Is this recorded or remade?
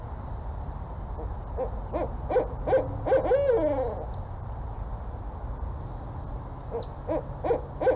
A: recorded